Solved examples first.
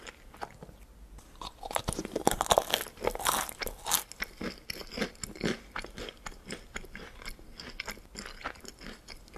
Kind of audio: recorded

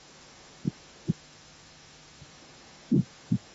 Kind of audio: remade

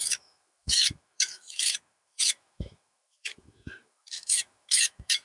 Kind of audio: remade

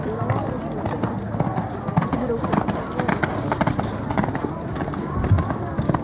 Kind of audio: recorded